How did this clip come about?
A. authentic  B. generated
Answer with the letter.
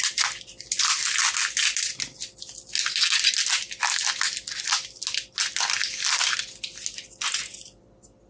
A